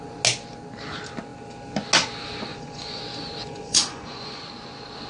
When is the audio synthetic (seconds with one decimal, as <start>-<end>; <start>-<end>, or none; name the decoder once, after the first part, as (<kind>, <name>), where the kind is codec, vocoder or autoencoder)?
2.5-3.0 (vocoder, Vocos); 3.4-4.4